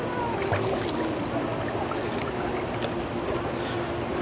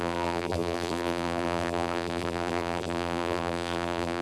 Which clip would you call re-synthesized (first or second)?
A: second